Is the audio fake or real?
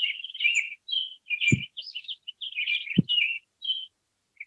real